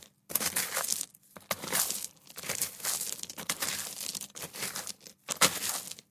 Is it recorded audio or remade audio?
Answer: recorded